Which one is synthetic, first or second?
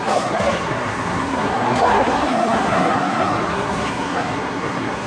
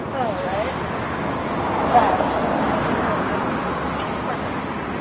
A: first